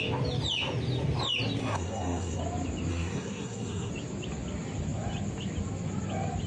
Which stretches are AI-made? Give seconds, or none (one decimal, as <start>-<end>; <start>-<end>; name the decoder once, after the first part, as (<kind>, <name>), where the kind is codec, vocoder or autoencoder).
1.6-2.4 (codec, SNAC); 2.9-3.9